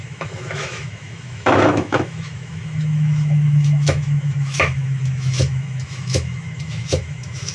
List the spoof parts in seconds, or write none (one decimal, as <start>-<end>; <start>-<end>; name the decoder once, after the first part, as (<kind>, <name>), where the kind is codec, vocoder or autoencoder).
0.0-7.5 (autoencoder, DAC-VAE)